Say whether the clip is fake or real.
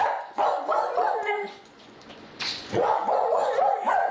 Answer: fake